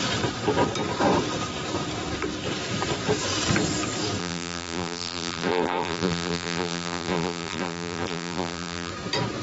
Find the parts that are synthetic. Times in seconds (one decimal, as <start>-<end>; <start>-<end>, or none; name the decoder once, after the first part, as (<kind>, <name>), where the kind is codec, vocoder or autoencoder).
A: 4.2-8.9 (vocoder, BigVGAN v2)